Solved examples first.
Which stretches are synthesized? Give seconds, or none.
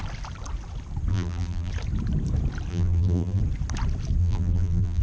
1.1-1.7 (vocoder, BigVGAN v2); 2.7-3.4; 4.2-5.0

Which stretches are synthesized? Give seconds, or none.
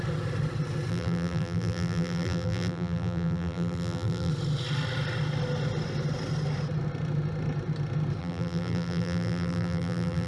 0.9-4.3 (vocoder, BigVGAN v2); 8.2-10.3